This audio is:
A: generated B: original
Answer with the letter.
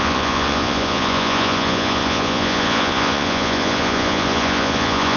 A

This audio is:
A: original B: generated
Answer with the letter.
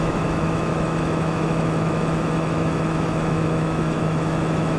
B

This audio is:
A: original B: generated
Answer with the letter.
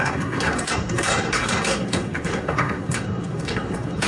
B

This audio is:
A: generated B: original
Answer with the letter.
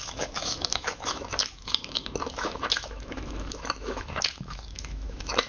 A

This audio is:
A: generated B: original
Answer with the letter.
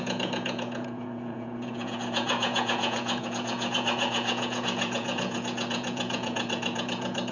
A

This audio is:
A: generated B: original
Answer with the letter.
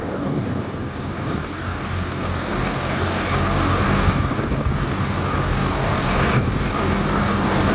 A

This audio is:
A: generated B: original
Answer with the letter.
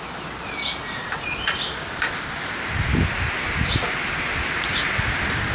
B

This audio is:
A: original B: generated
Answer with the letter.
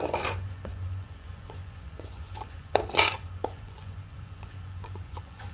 B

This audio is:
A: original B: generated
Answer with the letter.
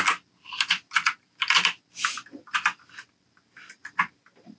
A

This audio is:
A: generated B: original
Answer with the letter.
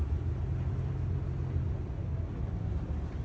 B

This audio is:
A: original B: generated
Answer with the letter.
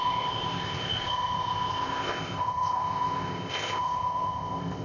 B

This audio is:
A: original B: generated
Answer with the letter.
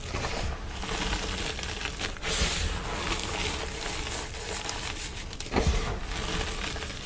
A